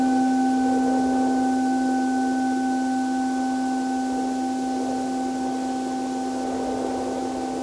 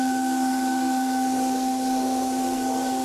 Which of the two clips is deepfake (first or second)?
second